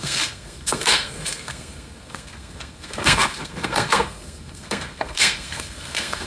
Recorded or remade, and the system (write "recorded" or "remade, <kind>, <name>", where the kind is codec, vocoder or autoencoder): remade, codec, SNAC